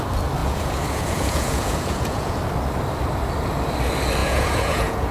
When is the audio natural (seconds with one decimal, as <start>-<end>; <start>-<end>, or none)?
0.0-0.4; 2.4-4.2